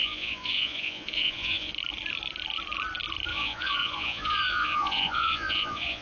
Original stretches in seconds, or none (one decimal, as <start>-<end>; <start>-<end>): 1.7-3.3